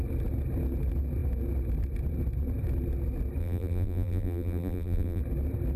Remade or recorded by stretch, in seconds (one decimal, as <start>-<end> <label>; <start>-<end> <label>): 0.0-3.4 recorded; 3.4-5.2 remade; 5.2-5.8 recorded